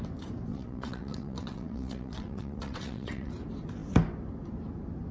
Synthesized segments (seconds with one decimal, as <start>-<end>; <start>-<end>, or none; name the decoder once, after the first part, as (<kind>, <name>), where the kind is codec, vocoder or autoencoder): 0.5-3.3 (vocoder, WaveNeXt)